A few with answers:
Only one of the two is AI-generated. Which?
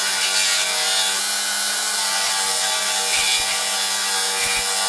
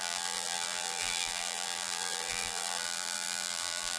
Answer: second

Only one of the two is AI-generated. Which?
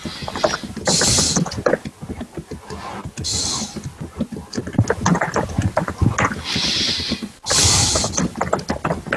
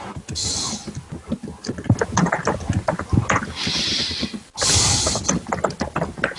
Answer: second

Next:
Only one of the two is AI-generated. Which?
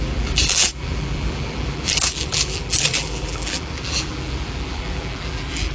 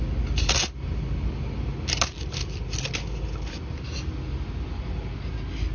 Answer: first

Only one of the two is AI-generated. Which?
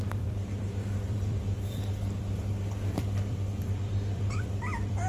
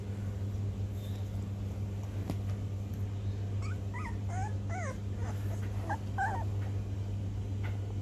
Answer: first